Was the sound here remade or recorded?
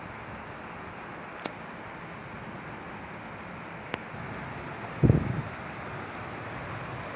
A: recorded